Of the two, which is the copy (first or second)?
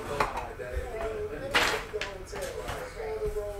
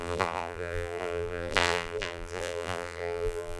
second